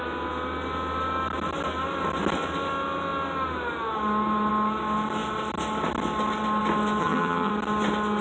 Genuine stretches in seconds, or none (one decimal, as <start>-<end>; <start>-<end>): 0.0-7.0; 7.5-8.2